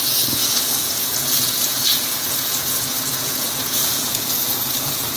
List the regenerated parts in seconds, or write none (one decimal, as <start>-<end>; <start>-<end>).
0.0-5.2